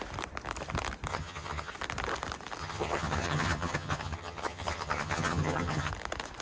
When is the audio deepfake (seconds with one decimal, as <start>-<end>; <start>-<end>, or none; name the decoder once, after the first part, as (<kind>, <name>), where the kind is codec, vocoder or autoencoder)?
1.1-1.7 (vocoder, HiFi-GAN); 2.6-5.9

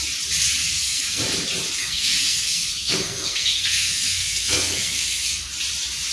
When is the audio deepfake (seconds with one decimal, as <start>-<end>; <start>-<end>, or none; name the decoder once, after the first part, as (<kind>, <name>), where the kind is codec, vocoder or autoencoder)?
0.6-1.2 (codec, SNAC); 1.8-5.5

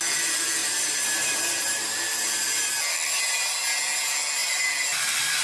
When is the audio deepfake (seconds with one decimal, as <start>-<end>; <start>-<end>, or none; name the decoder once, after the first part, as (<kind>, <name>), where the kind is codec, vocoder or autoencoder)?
0.6-2.7 (vocoder, BigVGAN v2); 4.4-5.4